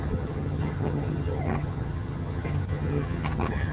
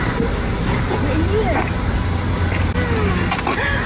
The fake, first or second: first